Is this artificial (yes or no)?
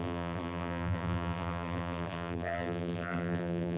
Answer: yes